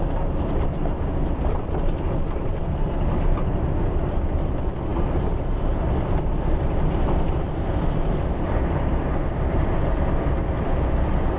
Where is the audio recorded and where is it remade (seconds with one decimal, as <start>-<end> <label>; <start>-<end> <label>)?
0.0-11.4 recorded